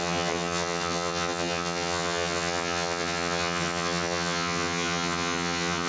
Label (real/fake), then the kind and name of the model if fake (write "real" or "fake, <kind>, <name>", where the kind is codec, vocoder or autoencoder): fake, vocoder, HiFi-GAN